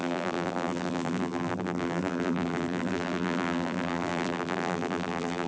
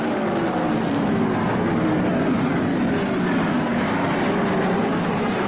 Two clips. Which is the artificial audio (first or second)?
first